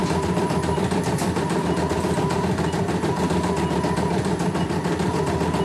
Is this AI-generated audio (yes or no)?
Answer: yes